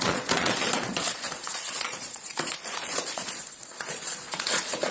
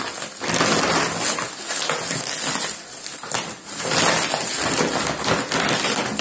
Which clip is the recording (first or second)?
second